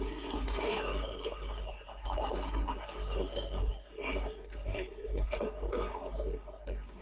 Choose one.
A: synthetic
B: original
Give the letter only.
A